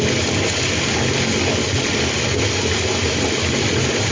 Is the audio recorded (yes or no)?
yes